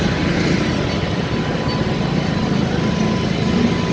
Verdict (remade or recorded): recorded